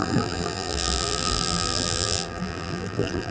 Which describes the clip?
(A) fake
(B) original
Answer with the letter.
A